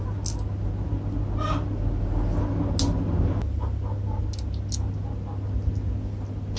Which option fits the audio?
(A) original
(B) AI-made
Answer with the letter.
A